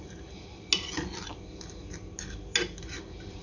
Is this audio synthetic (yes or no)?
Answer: no